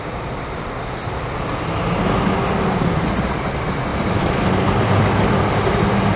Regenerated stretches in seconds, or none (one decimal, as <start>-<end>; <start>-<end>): none